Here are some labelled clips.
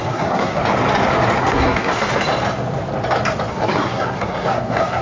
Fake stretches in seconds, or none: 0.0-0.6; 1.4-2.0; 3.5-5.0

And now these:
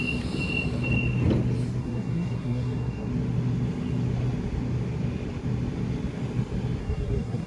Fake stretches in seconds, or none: 1.8-3.1; 6.8-7.5

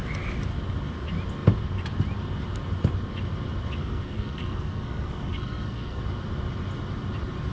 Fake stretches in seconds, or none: 3.8-6.0

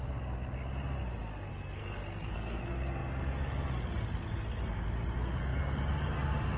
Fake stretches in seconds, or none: 1.5-2.6

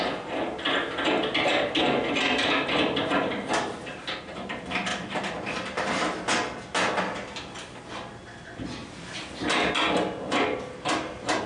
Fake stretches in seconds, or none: none

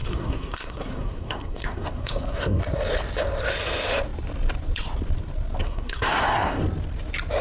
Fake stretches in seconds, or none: 0.0-2.6; 5.6-6.6